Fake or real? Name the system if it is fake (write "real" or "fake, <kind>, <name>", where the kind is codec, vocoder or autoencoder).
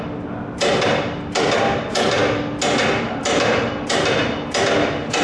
real